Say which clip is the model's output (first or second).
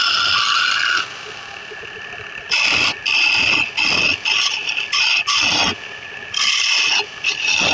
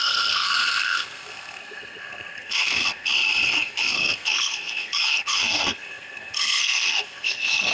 second